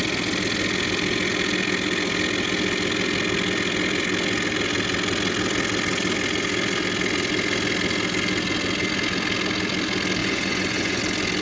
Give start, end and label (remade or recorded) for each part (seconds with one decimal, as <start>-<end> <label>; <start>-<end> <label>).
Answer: 0.0-10.2 recorded; 10.2-11.0 remade; 11.0-11.4 recorded